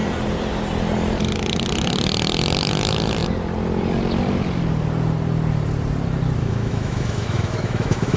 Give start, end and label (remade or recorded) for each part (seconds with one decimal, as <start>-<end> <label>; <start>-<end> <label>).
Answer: 0.0-6.4 recorded; 6.4-8.2 remade